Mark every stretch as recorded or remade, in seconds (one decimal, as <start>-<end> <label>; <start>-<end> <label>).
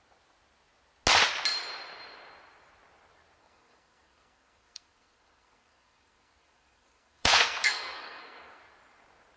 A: 0.0-3.4 recorded; 3.4-8.6 remade; 8.6-9.4 recorded